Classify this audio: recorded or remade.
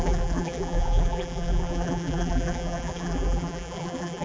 remade